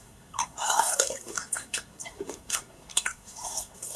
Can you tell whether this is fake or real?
fake